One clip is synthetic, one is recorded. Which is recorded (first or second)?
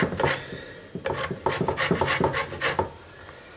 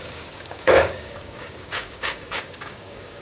first